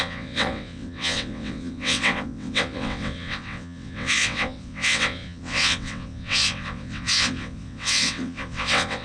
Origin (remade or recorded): remade